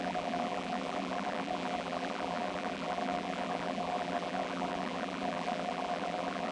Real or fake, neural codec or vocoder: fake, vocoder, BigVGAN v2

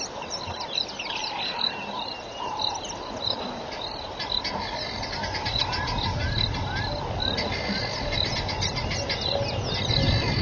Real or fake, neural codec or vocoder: real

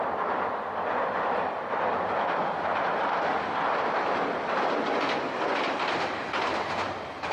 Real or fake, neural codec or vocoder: real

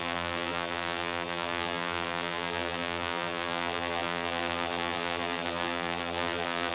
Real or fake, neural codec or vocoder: fake, vocoder, BigVGAN v2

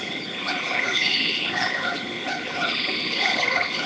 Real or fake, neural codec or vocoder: fake, codec, HILCodec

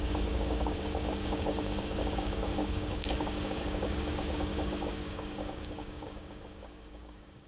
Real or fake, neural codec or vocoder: fake, codec, DAC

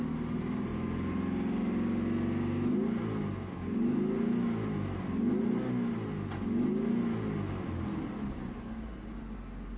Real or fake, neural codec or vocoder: real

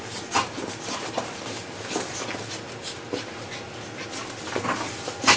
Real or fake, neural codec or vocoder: real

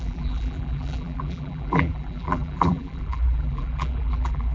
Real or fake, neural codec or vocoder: fake, vocoder, BigVGAN v2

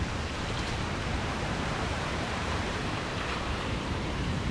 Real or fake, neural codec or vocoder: fake, vocoder, BigVGAN v2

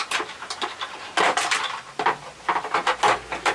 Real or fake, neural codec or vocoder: real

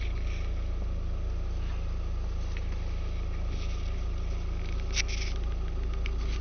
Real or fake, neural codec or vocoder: real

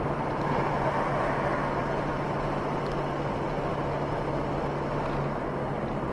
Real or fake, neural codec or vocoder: real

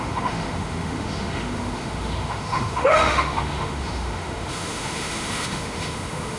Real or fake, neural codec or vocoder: fake, autoencoder, DAC-VAE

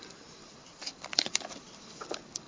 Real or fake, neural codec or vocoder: real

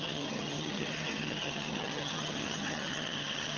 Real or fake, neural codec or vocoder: fake, vocoder, HiFi-GAN